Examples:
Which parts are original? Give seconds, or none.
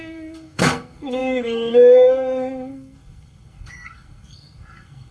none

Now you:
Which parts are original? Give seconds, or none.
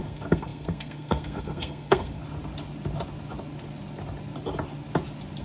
2.2-5.4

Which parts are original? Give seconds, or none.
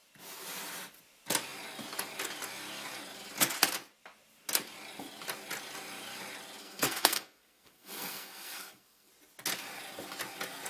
0.0-6.6; 9.1-10.7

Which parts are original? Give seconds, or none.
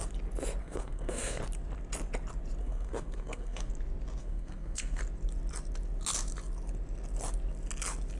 0.0-0.6; 1.4-2.6; 3.7-4.2; 5.0-8.2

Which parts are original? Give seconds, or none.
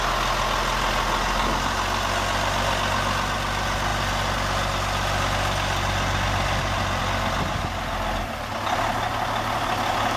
0.0-10.2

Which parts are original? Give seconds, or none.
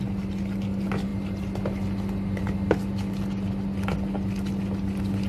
0.0-5.3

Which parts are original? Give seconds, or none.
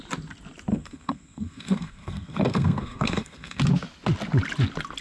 0.0-0.7; 3.6-5.0